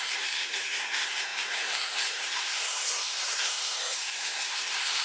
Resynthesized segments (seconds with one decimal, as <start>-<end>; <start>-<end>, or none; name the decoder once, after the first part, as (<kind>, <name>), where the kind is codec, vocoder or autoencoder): 0.0-5.0 (codec, SNAC)